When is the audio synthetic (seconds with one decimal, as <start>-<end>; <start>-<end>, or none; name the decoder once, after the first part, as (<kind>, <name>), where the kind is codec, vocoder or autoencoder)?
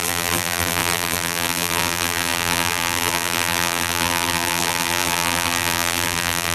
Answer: 0.0-6.5 (vocoder, BigVGAN v2)